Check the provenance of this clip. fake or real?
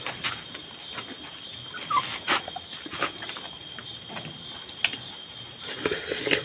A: real